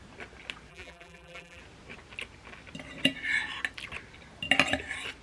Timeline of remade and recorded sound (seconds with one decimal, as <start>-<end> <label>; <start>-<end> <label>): 0.0-0.7 recorded; 0.7-1.6 remade; 1.6-5.2 recorded